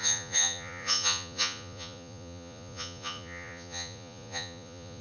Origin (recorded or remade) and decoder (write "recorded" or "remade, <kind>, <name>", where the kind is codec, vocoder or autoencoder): remade, vocoder, Vocos